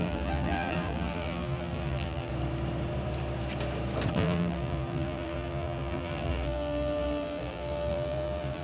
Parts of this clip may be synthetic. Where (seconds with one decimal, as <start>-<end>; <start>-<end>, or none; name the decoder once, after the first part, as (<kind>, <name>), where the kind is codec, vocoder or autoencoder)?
0.0-2.3 (vocoder, BigVGAN v2); 4.1-8.6